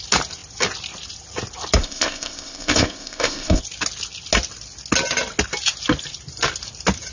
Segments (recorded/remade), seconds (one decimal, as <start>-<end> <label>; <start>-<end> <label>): 0.0-1.8 recorded; 1.8-3.6 remade; 3.6-7.1 recorded